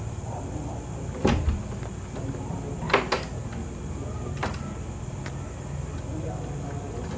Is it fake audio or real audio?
real